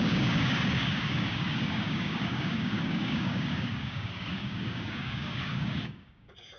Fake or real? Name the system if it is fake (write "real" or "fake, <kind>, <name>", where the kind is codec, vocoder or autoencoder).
fake, codec, DAC